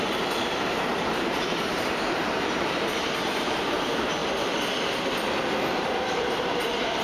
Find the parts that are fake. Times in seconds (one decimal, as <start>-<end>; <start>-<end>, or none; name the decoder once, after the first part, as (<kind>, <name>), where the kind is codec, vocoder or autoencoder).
0.0-4.2 (vocoder, BigVGAN v2); 5.8-7.0